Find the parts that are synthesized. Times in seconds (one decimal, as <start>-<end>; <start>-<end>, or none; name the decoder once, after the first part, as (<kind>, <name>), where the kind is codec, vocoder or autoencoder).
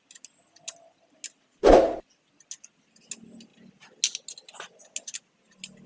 none